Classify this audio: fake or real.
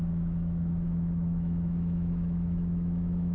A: fake